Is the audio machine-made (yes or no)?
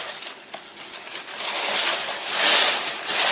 no